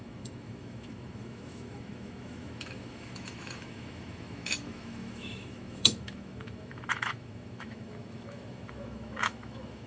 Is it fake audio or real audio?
fake